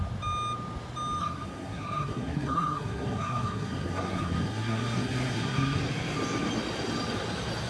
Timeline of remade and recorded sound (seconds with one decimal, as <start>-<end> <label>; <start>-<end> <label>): 0.0-1.2 recorded; 1.2-5.8 remade; 5.8-7.7 recorded